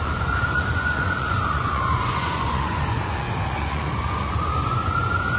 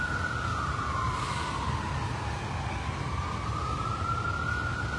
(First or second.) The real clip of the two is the second